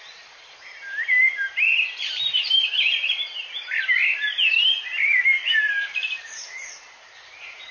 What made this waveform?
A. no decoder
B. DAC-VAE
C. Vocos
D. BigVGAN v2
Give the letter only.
D